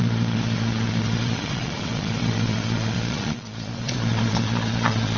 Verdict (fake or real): fake